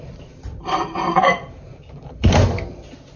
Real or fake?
fake